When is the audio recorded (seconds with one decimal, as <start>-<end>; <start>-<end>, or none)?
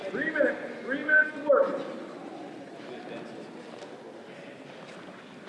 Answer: 0.0-5.5